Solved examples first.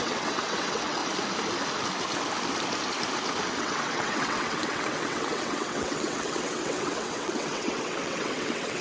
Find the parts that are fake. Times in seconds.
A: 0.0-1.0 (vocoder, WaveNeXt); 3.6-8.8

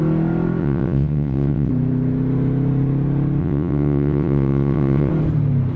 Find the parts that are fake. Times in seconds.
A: 0.6-1.7 (vocoder, WaveNeXt); 3.4-5.1

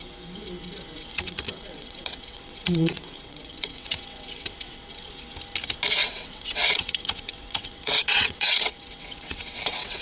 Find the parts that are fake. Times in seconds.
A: 1.0-5.1 (vocoder, WaveNeXt); 6.0-10.0

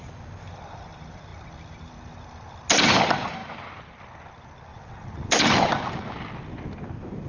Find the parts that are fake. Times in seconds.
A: 4.7-5.3 (vocoder, WaveNeXt)

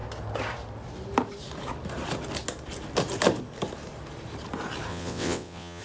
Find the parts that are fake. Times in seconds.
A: 4.9-5.8 (vocoder, WaveNeXt)

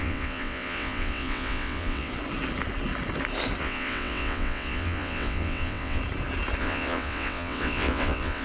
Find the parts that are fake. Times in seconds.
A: 0.0-2.1 (vocoder, WaveNeXt); 3.6-6.0; 6.6-8.4

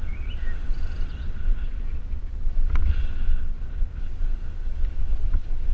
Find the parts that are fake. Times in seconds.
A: 1.4-1.9 (vocoder, WaveNeXt); 5.0-5.7

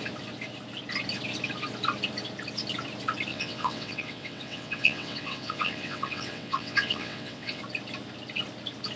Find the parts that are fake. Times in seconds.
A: 3.3-7.6 (vocoder, WaveNeXt)